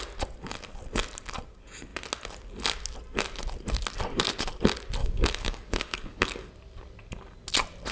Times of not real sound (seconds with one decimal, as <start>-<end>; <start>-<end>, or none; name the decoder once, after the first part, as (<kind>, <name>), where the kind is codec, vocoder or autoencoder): 5.0-6.5 (codec, DAC)